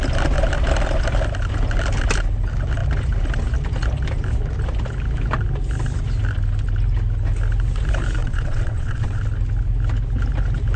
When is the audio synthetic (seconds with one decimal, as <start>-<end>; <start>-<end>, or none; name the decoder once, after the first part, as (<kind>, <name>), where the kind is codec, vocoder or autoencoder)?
8.2-9.2 (vocoder, WaveNeXt)